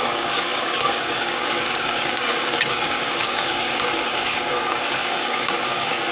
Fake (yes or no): yes